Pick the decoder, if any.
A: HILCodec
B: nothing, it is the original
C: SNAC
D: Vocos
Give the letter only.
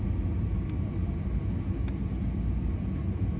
B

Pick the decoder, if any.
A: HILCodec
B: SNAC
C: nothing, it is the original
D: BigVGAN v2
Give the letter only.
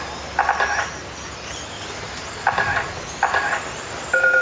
C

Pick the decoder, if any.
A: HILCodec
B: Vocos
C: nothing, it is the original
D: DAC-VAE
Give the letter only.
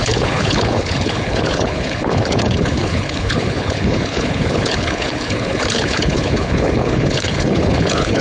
A